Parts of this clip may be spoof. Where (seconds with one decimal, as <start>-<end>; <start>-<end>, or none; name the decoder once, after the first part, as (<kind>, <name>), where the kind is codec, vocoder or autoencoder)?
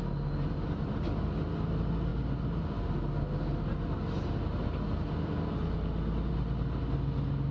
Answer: none